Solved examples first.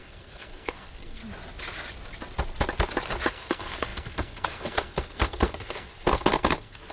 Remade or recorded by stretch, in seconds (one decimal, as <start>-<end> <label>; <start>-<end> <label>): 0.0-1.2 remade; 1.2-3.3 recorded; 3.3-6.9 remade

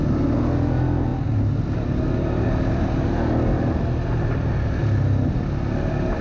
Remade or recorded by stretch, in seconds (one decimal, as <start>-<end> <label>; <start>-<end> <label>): 0.0-6.2 recorded

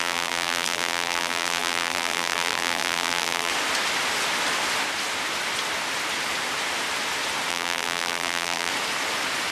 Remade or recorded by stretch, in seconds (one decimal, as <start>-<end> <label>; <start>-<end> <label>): 0.0-3.5 remade; 3.5-7.5 recorded; 7.5-8.7 remade; 8.7-9.5 recorded